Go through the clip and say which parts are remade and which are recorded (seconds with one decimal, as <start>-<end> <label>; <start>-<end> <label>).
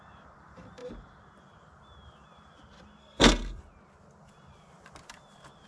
0.0-3.0 recorded; 3.0-3.6 remade; 3.6-5.7 recorded